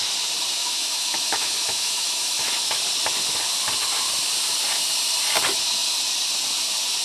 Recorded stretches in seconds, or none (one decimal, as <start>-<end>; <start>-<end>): 0.0-0.6; 2.8-7.0